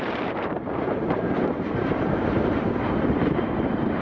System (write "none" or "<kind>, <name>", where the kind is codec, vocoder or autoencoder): vocoder, BigVGAN v2